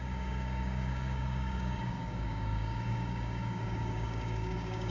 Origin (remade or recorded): remade